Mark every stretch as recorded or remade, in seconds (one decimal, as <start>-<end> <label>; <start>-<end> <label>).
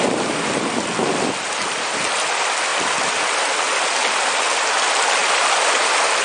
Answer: 0.0-6.2 recorded